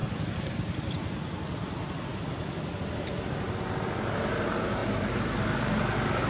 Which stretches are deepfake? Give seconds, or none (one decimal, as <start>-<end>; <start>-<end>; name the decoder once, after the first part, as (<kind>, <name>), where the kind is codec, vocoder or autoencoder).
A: none